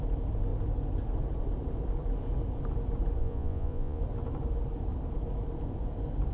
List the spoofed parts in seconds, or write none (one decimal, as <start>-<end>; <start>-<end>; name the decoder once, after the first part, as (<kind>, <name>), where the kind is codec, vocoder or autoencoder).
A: 3.2-4.0 (vocoder, Vocos)